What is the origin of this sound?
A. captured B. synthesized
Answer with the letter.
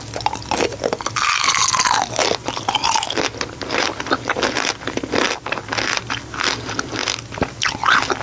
A